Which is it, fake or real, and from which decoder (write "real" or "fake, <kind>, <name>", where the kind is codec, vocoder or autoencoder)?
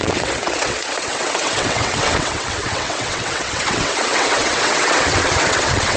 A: fake, vocoder, WaveNeXt